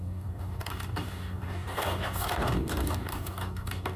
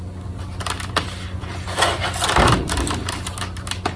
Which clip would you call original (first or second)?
second